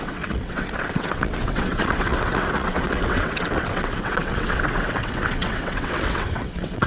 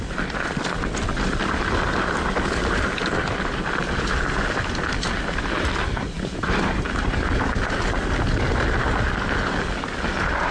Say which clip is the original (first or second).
second